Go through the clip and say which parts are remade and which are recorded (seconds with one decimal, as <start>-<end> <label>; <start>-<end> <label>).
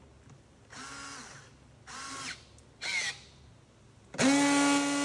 0.0-5.0 recorded